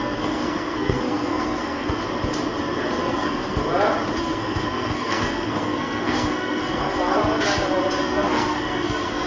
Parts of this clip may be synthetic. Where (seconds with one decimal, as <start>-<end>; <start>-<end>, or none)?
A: 0.0-2.0; 3.0-3.6; 4.2-7.2; 8.0-9.3